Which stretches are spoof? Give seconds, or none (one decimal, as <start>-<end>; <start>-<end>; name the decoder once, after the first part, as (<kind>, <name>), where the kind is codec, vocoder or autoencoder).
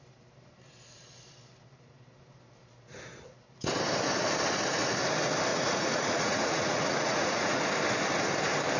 5.5-7.6 (vocoder, Vocos)